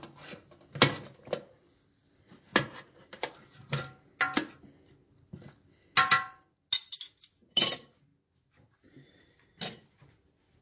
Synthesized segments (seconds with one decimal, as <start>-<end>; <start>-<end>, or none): none